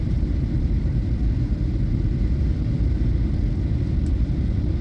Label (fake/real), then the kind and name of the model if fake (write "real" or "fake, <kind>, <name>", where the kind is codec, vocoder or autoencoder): fake, vocoder, BigVGAN v2